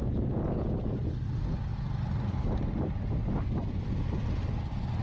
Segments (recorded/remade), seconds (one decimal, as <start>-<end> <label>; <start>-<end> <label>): 0.0-1.1 remade; 1.1-5.0 recorded

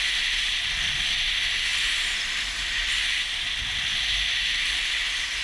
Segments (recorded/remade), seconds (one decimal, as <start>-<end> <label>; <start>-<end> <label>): 0.0-5.4 recorded